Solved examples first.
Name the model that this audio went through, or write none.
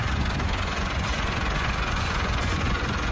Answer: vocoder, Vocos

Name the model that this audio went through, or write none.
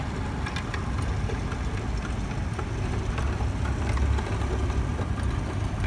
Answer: none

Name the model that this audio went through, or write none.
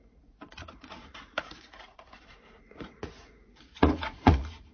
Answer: vocoder, Vocos